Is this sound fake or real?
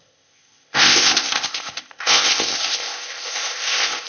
fake